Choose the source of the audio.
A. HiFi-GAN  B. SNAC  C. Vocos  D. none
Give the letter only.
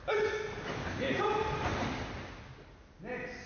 D